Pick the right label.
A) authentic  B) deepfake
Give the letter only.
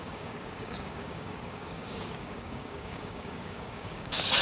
B